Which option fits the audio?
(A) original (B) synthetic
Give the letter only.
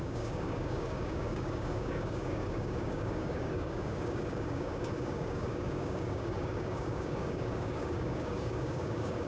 B